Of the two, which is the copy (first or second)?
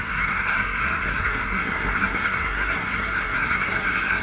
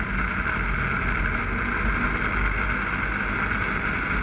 first